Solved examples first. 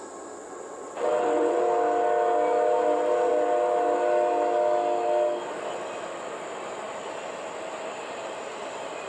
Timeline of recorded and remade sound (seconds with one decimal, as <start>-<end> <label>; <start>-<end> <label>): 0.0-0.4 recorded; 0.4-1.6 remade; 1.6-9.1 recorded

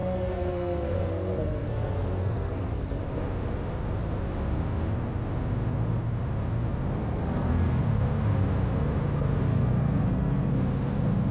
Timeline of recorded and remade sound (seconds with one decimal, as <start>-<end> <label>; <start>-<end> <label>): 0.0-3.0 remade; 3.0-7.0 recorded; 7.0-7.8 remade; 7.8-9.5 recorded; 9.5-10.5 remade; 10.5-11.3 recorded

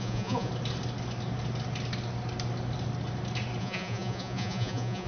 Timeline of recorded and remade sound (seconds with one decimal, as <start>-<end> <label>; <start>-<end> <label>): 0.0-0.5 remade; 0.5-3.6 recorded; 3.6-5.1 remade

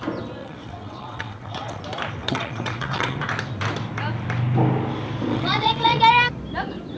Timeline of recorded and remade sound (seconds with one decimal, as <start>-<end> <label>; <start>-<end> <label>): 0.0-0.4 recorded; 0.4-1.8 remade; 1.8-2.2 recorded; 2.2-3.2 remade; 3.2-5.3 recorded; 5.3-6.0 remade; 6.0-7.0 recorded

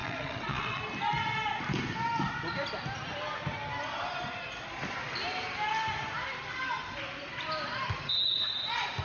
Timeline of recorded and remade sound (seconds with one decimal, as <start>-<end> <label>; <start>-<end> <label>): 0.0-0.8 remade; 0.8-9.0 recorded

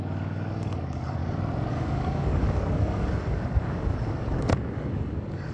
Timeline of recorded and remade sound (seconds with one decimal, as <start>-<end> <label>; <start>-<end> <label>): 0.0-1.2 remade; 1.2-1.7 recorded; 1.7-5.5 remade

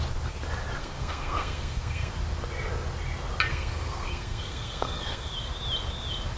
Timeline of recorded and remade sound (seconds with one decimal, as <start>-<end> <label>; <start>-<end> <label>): 0.0-0.8 recorded; 0.8-2.1 remade; 2.1-3.5 recorded; 3.5-5.3 remade; 5.3-6.4 recorded

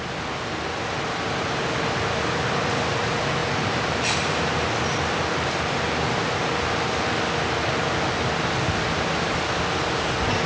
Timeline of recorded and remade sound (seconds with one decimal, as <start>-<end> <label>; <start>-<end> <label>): 0.0-10.5 recorded